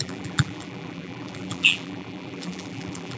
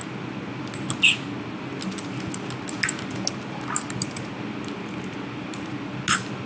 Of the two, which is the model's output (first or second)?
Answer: first